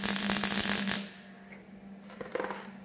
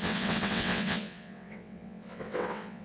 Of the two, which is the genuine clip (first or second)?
first